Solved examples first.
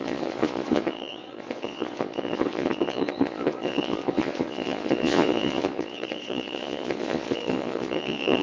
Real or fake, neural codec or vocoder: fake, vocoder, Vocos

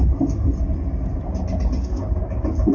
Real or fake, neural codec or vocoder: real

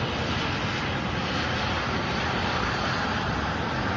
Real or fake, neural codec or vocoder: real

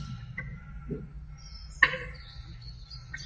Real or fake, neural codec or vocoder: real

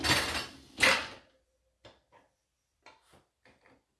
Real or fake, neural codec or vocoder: real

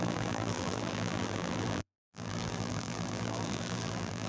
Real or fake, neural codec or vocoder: fake, vocoder, BigVGAN v2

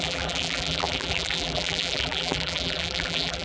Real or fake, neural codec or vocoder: fake, vocoder, BigVGAN v2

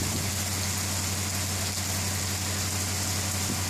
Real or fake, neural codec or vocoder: real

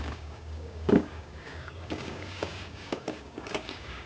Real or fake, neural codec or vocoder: fake, codec, DAC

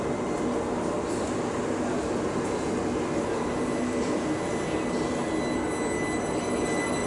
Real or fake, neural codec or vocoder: real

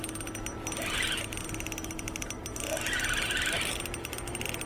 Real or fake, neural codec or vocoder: real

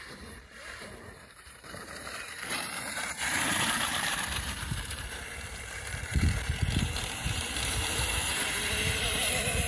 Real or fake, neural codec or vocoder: fake, vocoder, BigVGAN v2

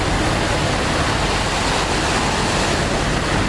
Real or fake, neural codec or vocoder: real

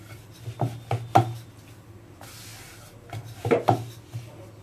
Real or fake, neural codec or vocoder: real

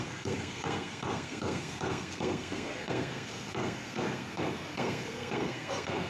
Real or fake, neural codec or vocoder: fake, codec, SNAC